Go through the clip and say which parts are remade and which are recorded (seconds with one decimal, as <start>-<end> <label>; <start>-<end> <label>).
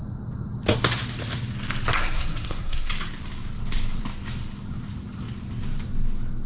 0.0-1.9 recorded; 1.9-2.9 remade; 2.9-6.5 recorded